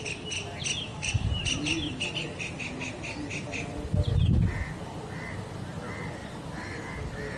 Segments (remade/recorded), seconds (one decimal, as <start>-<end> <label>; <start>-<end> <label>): 0.0-0.9 recorded; 0.9-1.4 remade; 1.4-7.4 recorded